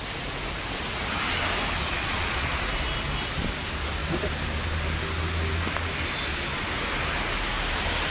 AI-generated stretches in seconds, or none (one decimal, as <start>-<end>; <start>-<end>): 1.8-2.6